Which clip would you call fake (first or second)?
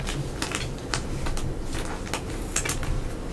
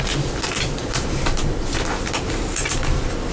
second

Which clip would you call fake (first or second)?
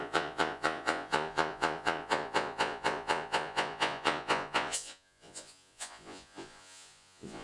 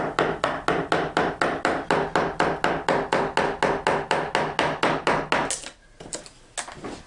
first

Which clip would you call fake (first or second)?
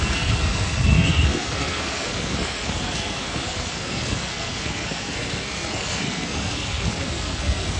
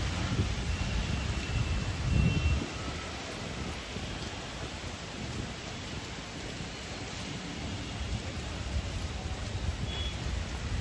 first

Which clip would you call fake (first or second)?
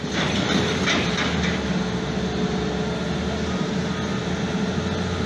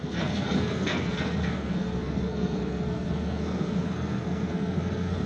second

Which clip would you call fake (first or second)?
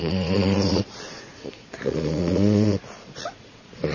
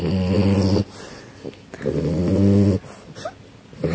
first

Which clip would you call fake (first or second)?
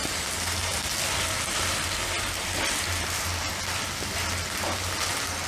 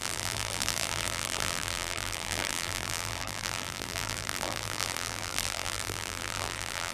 second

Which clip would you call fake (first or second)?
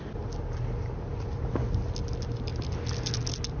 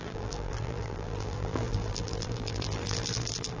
second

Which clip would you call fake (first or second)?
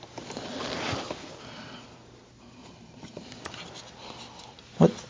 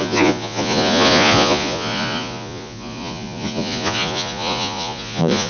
second